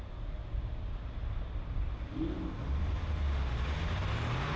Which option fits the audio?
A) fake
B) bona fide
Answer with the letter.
B